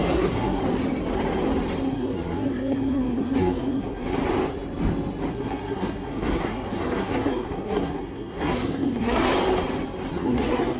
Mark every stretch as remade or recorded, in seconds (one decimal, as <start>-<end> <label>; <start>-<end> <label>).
0.0-0.6 remade; 0.6-1.9 recorded; 1.9-4.2 remade; 4.2-5.3 recorded; 5.3-9.3 remade; 9.3-10.1 recorded; 10.1-10.8 remade